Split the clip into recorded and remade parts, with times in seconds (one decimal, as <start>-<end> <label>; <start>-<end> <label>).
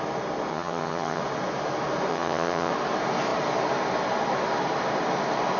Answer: 0.0-0.5 recorded; 0.5-1.2 remade; 1.2-2.1 recorded; 2.1-2.7 remade; 2.7-5.6 recorded